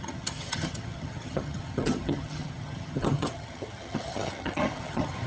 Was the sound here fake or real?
fake